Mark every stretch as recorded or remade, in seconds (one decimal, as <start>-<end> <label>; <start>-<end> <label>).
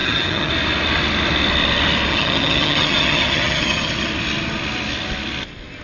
0.0-0.5 remade; 0.5-2.1 recorded; 2.1-4.1 remade; 4.1-5.8 recorded